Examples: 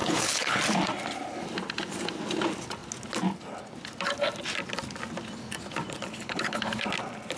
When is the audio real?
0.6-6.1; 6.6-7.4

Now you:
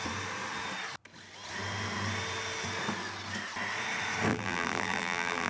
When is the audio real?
0.0-4.3